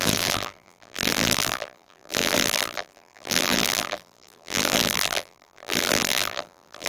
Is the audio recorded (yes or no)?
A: no